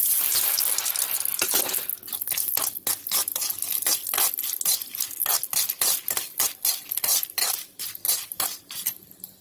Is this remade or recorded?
recorded